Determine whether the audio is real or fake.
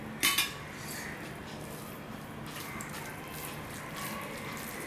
real